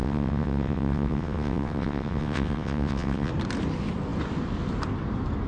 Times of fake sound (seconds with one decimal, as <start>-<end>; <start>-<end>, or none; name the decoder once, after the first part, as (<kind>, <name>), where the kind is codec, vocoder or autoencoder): 0.0-3.3 (vocoder, WaveNeXt)